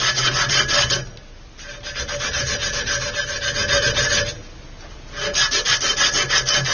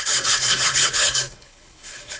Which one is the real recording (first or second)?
first